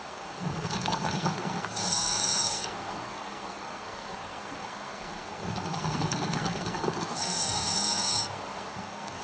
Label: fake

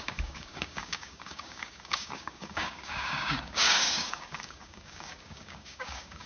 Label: fake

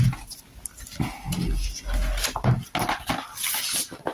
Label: real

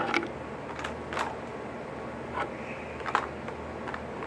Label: real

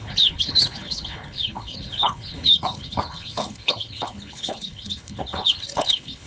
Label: fake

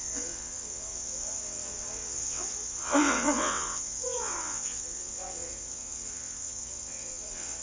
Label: fake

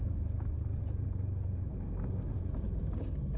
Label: real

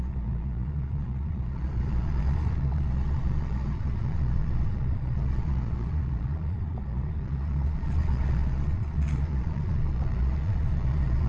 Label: fake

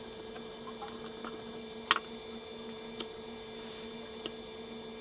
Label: real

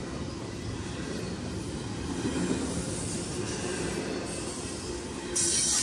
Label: real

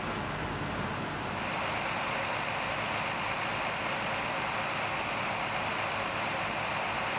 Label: real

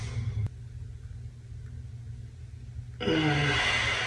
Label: real